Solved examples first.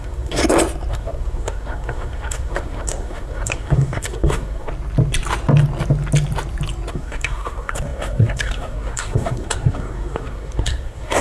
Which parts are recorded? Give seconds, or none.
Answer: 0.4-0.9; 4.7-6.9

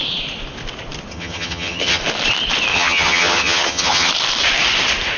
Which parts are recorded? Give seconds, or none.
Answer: 0.0-1.1; 2.0-2.7; 4.1-5.2